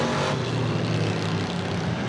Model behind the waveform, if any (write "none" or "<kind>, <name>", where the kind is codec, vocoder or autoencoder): none